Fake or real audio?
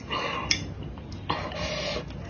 real